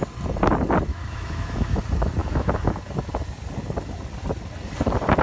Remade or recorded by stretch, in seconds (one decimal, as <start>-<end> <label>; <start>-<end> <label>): 0.0-0.9 recorded; 0.9-1.8 remade; 1.8-2.2 recorded; 2.2-2.7 remade; 2.7-5.2 recorded